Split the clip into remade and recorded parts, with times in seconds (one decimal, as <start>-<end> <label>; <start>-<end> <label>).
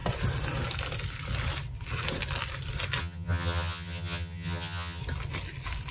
0.0-3.0 recorded; 3.0-5.0 remade; 5.0-5.9 recorded